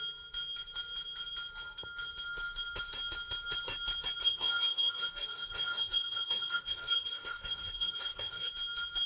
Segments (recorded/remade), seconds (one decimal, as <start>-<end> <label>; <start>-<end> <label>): 0.0-4.2 recorded; 4.2-8.5 remade; 8.5-9.1 recorded